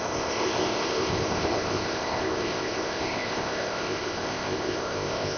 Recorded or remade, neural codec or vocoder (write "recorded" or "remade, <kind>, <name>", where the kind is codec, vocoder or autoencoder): remade, codec, ZipCodec